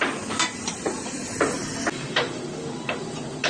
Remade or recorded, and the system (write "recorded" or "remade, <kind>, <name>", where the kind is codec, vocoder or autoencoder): recorded